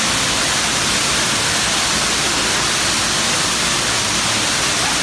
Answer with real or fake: real